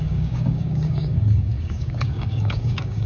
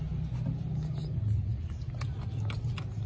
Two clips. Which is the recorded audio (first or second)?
second